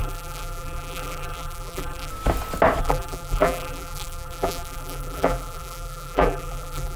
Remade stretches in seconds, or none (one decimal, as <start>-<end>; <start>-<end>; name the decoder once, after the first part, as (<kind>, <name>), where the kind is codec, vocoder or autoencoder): 0.0-2.1 (vocoder, BigVGAN v2); 2.8-7.0